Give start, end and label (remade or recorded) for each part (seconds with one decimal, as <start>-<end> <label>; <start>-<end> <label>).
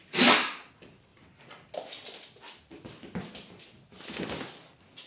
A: 0.0-5.1 recorded